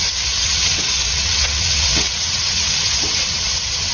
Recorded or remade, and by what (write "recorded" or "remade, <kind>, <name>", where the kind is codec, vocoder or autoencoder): remade, vocoder, WaveNeXt